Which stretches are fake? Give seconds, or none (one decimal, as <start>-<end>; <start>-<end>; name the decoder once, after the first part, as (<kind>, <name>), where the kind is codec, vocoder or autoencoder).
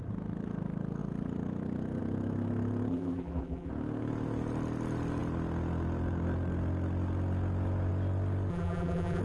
2.9-3.7 (vocoder, BigVGAN v2); 8.5-9.2